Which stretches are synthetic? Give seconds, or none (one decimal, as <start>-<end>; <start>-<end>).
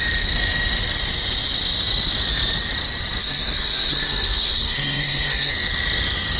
3.2-5.5